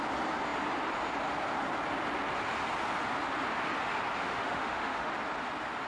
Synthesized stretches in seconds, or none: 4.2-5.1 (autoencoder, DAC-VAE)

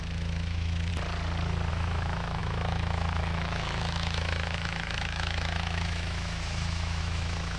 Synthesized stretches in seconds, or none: 0.0-0.9 (autoencoder, DAC-VAE); 1.7-7.6

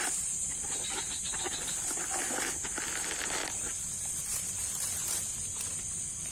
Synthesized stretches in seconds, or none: none

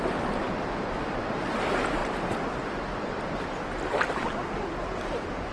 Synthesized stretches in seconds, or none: none